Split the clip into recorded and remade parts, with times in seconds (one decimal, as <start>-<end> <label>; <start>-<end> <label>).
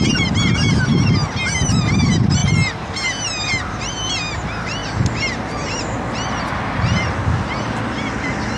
0.0-8.6 recorded